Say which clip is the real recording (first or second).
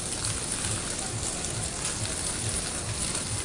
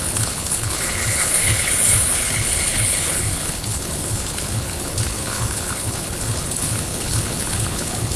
first